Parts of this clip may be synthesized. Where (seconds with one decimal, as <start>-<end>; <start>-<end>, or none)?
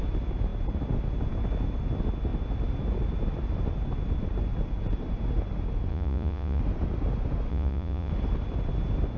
5.9-6.6; 7.5-8.1